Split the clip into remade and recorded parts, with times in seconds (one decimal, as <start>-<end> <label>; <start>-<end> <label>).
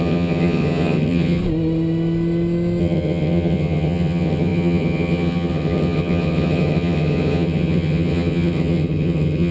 0.0-1.4 remade; 1.4-2.8 recorded; 2.8-9.5 remade